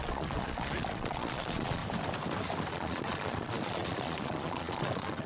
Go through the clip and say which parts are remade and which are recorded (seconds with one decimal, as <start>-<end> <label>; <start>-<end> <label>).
0.0-1.8 remade; 1.8-2.7 recorded; 2.7-5.3 remade